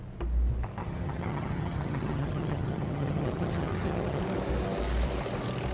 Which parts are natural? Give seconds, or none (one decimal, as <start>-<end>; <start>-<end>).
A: 0.0-0.8; 4.2-5.7